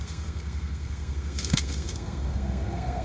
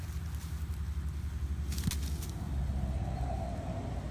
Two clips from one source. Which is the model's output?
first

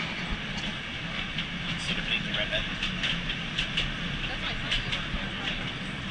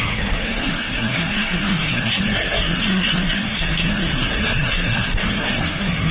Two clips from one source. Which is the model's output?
second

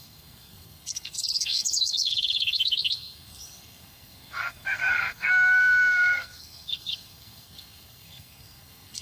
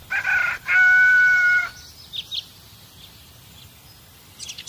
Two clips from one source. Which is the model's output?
first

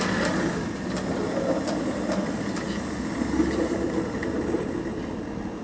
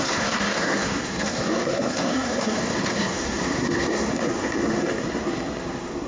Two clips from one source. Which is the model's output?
second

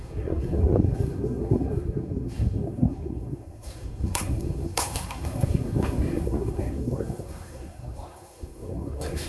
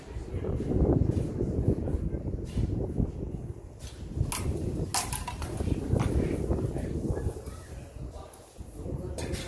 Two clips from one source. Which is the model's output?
first